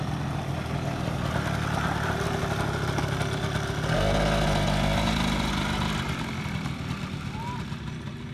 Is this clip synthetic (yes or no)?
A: no